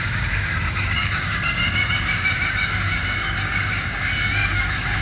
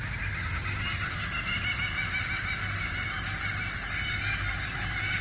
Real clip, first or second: second